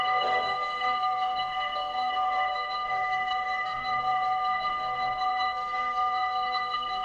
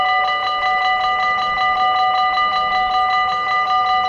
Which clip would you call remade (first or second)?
first